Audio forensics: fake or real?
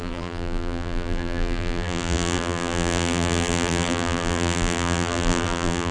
fake